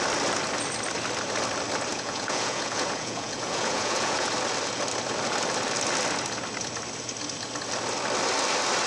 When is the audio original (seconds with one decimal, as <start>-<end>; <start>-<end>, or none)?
0.0-1.9; 4.3-8.9